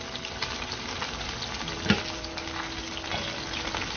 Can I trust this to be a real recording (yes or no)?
yes